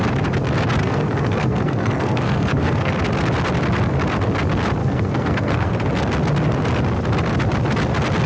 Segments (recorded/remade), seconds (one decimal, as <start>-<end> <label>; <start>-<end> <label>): 0.0-0.8 recorded; 0.8-3.0 remade; 3.0-4.8 recorded; 4.8-5.7 remade; 5.7-8.3 recorded